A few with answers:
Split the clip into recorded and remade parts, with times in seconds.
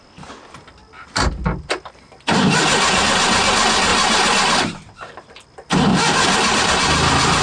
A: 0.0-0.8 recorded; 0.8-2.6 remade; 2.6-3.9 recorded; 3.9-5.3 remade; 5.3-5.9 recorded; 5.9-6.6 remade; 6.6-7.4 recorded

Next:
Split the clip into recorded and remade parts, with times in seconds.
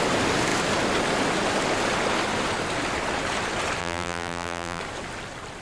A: 0.0-3.8 recorded; 3.8-4.8 remade; 4.8-5.6 recorded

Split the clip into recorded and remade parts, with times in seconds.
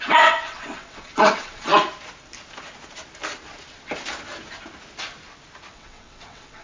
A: 0.0-1.7 remade; 1.7-5.7 recorded; 5.7-6.6 remade